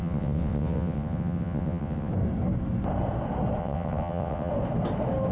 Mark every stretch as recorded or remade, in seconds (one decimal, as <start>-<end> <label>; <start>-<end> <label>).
0.0-2.1 remade; 2.1-3.6 recorded; 3.6-4.5 remade; 4.5-5.3 recorded